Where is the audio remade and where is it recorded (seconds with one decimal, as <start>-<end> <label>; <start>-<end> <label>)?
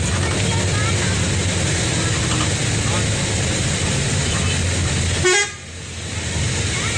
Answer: 0.0-7.0 recorded